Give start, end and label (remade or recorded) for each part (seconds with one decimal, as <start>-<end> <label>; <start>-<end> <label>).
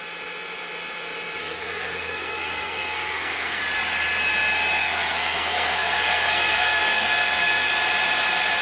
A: 0.0-1.4 recorded; 1.4-3.6 remade; 3.6-4.8 recorded; 4.8-7.7 remade; 7.7-8.6 recorded